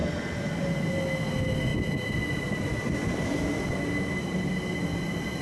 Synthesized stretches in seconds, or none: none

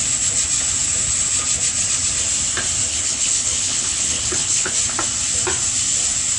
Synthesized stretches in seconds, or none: 2.9-4.7 (codec, HILCodec)

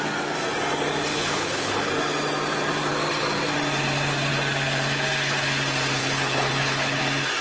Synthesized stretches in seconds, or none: 1.1-1.9 (codec, HILCodec); 6.0-7.0

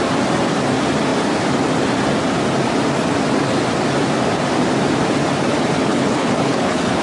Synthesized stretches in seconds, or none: 5.9-7.0 (codec, HILCodec)

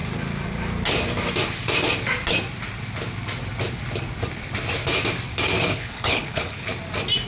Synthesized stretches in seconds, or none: 5.7-6.7 (codec, HILCodec)

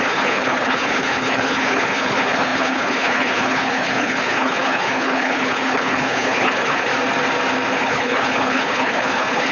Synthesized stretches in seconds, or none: 0.0-6.9 (codec, HILCodec); 7.7-9.5

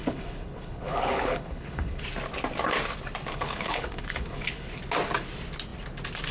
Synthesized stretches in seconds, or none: 0.0-2.0 (codec, HILCodec); 3.3-4.8